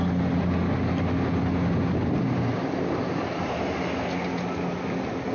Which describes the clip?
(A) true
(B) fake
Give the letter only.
A